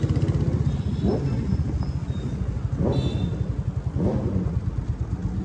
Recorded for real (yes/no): yes